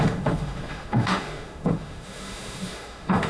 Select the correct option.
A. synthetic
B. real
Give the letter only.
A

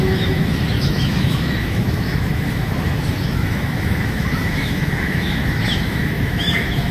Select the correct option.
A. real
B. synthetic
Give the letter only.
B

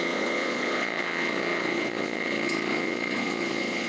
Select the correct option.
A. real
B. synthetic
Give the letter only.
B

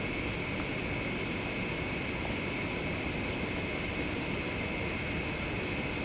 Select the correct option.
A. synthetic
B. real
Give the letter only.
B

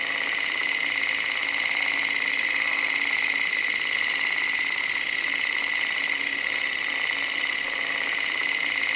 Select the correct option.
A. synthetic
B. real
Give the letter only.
B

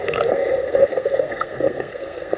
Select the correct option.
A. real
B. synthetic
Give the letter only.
B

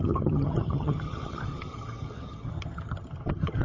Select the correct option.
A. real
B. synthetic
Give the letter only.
B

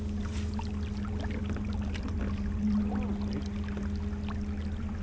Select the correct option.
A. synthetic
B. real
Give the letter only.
B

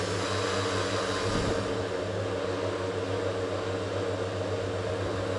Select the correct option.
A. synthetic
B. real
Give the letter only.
B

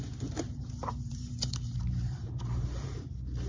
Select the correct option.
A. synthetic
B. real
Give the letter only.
A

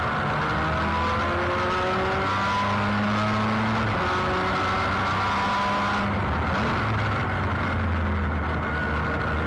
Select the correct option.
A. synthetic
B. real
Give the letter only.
B